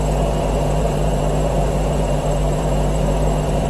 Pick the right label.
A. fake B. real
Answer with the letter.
A